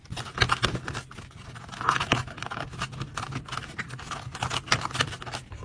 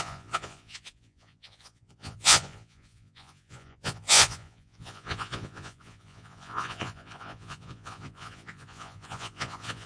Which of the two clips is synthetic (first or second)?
second